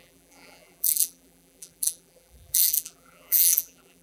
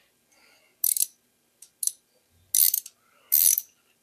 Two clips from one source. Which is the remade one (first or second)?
first